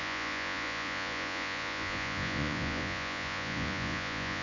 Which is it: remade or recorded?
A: remade